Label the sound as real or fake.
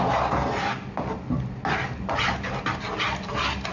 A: real